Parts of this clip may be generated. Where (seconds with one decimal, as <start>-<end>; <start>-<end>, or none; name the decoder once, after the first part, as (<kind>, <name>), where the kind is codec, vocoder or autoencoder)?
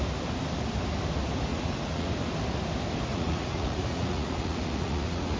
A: 1.5-2.1 (vocoder, Vocos); 3.1-5.4